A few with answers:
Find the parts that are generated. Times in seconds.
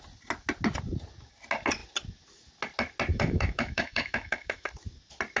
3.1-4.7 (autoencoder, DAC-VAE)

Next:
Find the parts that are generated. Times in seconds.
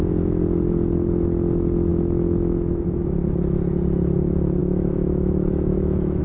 1.9-3.0 (autoencoder, DAC-VAE); 4.6-6.2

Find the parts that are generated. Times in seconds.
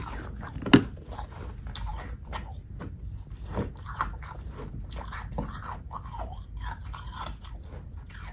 none